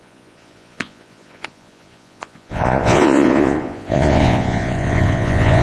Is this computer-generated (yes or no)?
yes